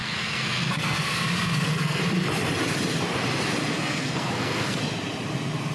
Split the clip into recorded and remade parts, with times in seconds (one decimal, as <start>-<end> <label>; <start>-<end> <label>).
0.0-2.0 remade; 2.0-3.7 recorded; 3.7-4.8 remade; 4.8-5.7 recorded